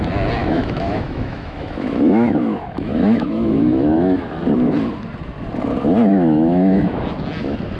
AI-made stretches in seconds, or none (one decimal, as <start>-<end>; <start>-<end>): 0.4-4.3; 6.1-7.0